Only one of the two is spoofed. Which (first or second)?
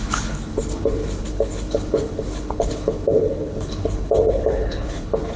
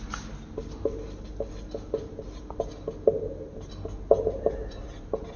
first